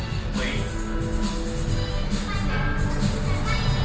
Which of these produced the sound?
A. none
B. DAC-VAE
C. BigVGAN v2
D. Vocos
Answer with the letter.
A